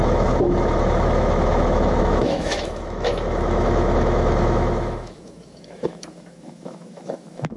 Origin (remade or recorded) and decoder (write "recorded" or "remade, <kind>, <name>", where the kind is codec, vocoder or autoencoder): remade, autoencoder, DAC-VAE